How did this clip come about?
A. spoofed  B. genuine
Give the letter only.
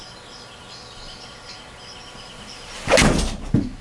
B